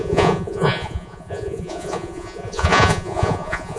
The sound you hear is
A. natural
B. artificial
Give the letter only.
B